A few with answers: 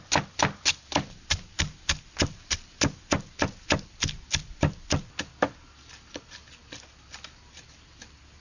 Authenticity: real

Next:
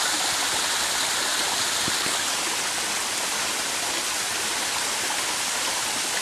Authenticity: real